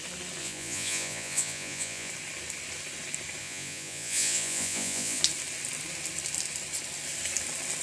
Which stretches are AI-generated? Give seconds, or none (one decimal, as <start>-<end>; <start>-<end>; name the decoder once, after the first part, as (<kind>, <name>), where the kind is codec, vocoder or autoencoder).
0.4-2.1 (vocoder, Vocos); 3.4-5.2